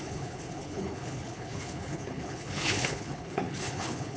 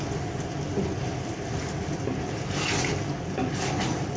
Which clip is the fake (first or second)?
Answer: first